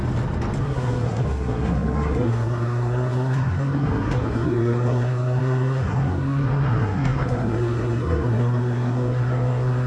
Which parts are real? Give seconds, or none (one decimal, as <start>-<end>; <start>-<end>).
0.0-0.6